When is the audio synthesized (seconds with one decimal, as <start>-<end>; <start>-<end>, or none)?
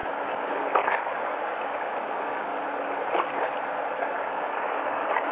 0.0-2.5; 4.0-5.3